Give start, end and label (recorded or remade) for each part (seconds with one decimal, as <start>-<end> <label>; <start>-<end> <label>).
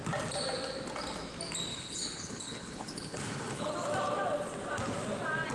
0.0-1.7 recorded; 1.7-3.7 remade; 3.7-5.5 recorded